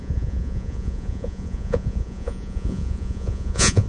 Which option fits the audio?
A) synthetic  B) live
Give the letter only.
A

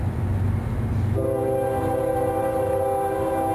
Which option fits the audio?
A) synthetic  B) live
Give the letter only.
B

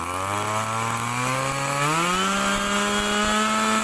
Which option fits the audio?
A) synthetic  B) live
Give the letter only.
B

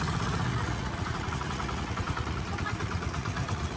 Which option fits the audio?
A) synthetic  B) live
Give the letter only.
A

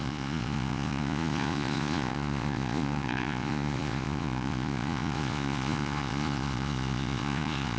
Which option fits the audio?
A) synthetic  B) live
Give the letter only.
A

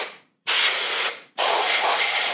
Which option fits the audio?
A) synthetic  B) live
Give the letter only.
A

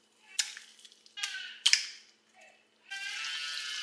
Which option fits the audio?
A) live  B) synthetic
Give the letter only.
A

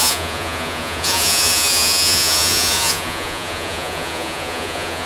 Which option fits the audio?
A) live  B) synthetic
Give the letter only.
B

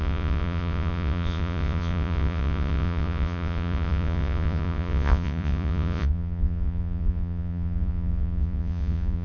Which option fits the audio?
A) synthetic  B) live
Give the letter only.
A